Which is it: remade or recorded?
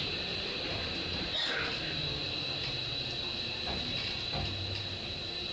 remade